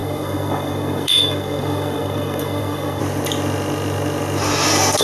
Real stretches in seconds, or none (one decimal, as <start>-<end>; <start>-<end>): 3.0-5.0